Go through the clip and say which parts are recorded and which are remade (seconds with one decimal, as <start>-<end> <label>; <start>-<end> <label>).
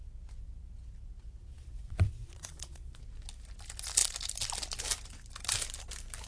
0.0-1.5 recorded; 1.5-3.0 remade; 3.0-6.3 recorded